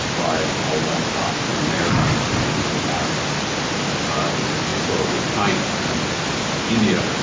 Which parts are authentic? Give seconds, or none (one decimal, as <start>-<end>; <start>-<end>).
0.0-7.2